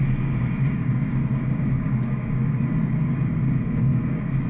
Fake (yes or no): yes